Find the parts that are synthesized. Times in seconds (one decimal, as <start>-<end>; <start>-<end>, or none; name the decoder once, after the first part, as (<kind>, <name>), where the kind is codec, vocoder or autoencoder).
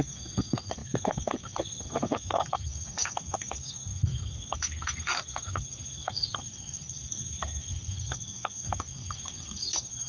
0.0-10.1 (codec, SNAC)